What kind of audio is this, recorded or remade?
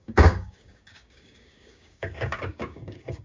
remade